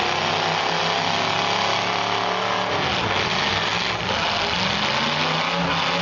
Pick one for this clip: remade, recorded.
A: recorded